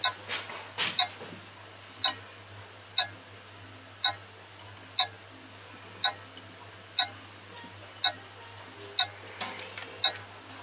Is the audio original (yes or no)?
yes